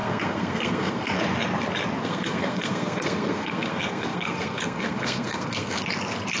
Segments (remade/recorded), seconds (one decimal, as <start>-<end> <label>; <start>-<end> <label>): 0.0-1.2 remade; 1.2-2.0 recorded; 2.0-5.8 remade; 5.8-6.4 recorded